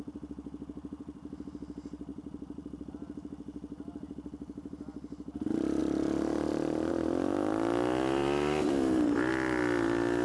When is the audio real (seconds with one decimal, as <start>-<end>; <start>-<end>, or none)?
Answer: 0.0-2.1; 2.9-8.2; 9.3-10.2